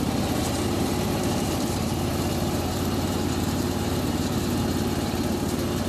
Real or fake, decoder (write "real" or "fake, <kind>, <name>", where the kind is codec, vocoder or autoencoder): fake, vocoder, BigVGAN v2